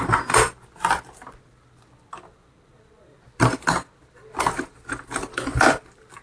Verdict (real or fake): fake